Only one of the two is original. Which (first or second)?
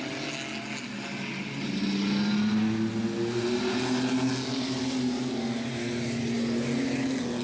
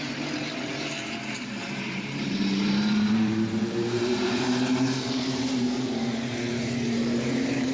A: first